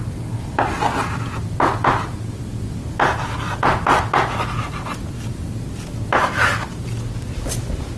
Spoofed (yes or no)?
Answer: no